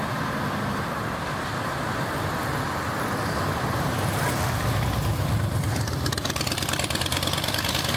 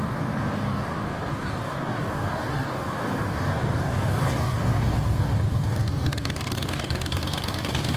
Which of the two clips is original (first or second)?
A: first